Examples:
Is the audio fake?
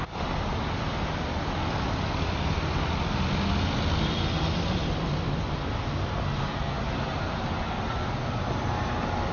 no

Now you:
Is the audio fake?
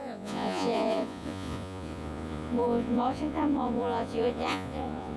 yes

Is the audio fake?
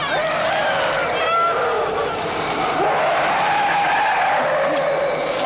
no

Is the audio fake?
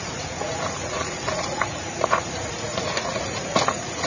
yes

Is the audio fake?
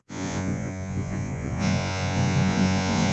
yes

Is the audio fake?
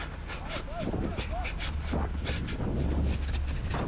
no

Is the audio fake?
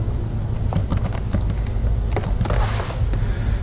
no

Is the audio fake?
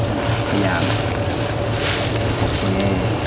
no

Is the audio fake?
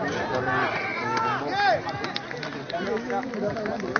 no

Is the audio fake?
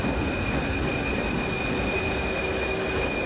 no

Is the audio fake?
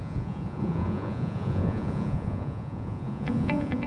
yes